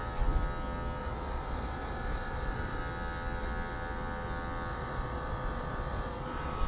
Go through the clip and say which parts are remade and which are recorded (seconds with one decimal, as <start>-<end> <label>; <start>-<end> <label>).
0.0-1.0 recorded; 1.0-2.8 remade; 2.8-4.7 recorded; 4.7-6.7 remade